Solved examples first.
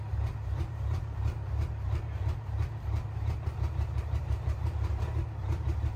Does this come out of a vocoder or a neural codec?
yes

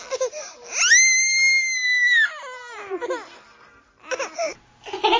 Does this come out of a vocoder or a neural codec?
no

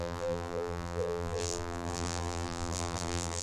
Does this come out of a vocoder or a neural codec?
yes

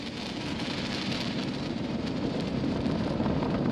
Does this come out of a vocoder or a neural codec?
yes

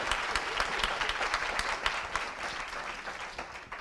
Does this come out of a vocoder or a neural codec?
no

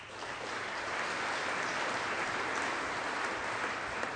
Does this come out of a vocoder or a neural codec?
yes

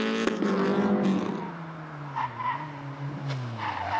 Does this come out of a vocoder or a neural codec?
no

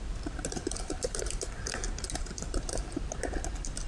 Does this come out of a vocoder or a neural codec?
yes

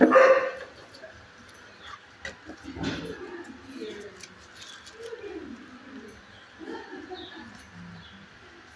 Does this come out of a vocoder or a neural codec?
no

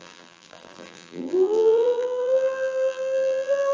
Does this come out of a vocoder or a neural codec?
yes